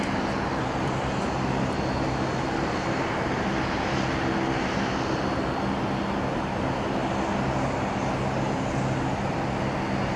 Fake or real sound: real